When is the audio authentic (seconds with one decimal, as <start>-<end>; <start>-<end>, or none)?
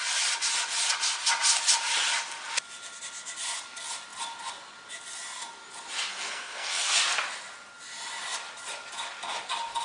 0.0-6.1; 7.0-9.8